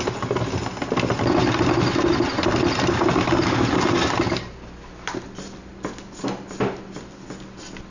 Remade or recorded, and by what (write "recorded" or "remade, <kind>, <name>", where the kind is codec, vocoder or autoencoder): recorded